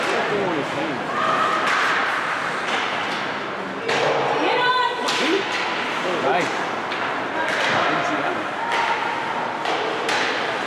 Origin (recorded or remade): recorded